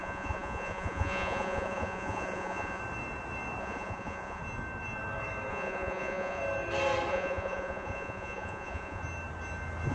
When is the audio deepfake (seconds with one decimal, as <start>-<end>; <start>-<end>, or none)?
0.0-2.8; 3.6-4.4; 5.5-6.4; 7.1-9.0